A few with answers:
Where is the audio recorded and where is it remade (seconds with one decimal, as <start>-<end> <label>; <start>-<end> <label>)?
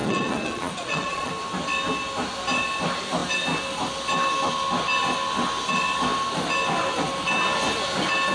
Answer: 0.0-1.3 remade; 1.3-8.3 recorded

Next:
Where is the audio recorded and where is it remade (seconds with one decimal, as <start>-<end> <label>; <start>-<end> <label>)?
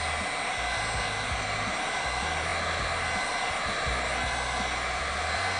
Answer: 0.0-5.6 recorded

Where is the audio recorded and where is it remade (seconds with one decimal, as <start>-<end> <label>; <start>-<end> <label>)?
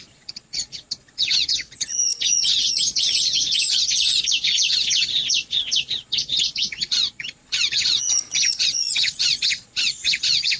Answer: 0.0-10.6 remade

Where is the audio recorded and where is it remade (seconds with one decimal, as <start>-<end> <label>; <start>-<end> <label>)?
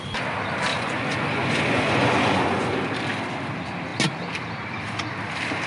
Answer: 0.0-0.7 recorded; 0.7-2.7 remade; 2.7-5.7 recorded